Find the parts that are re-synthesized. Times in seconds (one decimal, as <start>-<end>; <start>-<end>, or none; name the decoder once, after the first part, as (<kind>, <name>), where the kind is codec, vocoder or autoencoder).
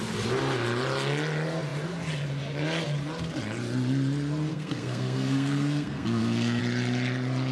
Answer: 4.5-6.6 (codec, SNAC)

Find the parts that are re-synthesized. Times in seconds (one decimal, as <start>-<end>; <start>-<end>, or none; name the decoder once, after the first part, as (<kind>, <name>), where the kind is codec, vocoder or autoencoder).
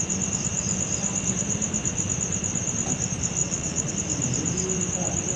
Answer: 3.4-3.9 (vocoder, Vocos)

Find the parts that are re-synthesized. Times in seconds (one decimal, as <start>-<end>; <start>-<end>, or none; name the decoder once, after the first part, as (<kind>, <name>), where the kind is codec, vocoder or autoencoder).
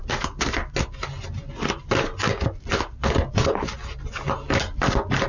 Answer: none